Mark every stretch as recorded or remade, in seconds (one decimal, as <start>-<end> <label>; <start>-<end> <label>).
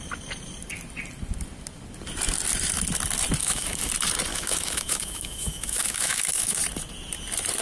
0.0-3.4 recorded; 3.4-3.9 remade; 3.9-4.3 recorded; 4.3-6.6 remade; 6.6-7.6 recorded